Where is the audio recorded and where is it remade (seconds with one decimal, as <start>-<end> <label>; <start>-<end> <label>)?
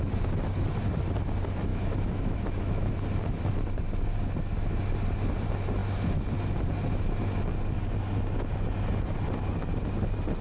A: 0.0-1.7 recorded; 1.7-2.9 remade; 2.9-10.4 recorded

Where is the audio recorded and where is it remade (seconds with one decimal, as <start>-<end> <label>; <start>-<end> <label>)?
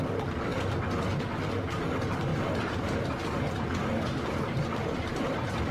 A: 0.0-2.3 recorded; 2.3-5.7 remade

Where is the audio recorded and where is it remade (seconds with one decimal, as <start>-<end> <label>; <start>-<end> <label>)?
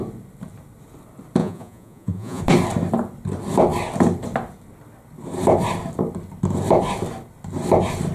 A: 0.0-1.4 recorded; 1.4-2.4 remade; 2.4-8.1 recorded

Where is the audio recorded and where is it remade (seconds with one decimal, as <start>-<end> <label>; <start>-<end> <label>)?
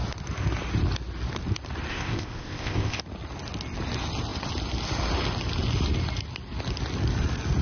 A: 0.0-1.9 recorded; 1.9-3.0 remade; 3.0-7.6 recorded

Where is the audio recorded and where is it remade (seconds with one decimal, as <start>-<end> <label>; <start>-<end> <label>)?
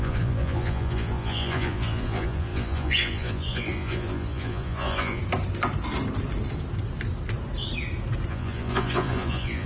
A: 0.0-5.2 remade; 5.2-8.3 recorded; 8.3-9.7 remade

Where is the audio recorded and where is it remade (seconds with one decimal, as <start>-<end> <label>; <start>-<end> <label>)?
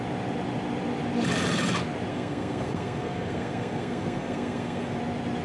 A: 0.0-2.1 recorded; 2.1-5.0 remade; 5.0-5.4 recorded